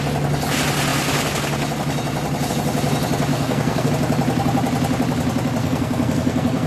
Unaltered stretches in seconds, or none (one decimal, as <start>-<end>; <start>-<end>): 0.0-3.3; 3.9-5.6